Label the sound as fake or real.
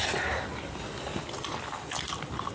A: real